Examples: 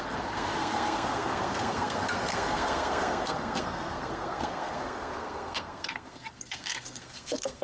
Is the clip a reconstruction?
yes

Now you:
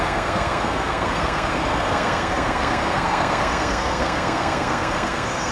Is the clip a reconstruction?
yes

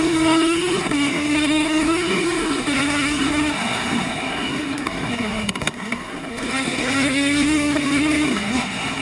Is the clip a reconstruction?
yes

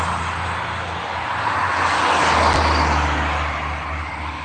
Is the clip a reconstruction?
no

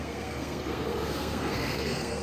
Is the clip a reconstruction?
yes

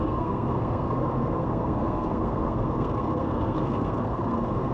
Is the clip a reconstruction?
yes